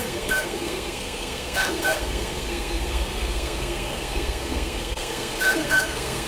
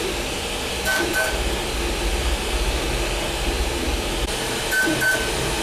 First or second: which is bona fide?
second